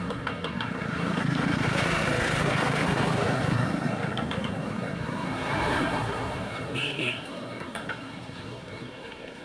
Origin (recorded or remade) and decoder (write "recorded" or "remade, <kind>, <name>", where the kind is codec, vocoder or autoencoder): remade, codec, SNAC